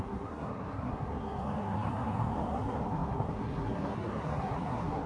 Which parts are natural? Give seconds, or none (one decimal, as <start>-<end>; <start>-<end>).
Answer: none